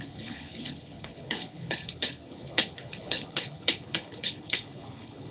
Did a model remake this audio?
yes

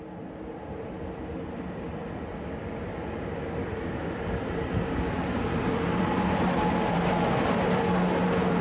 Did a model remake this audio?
no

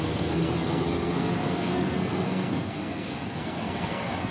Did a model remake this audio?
yes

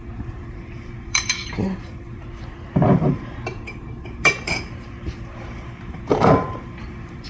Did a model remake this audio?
yes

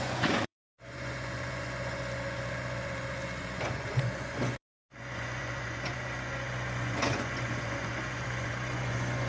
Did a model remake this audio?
yes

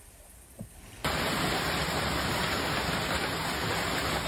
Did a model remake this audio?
no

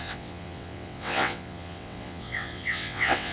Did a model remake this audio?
yes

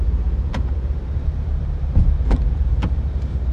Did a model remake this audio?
yes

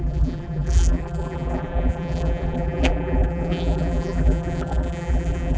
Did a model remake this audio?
yes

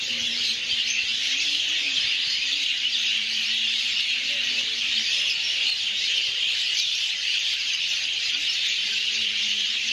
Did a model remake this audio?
yes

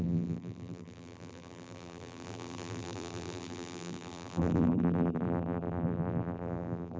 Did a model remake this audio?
yes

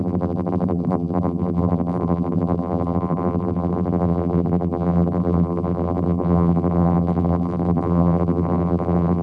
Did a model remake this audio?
yes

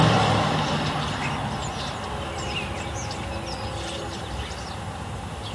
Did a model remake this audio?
no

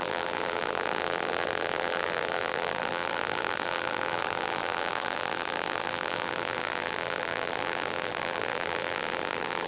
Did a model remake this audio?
yes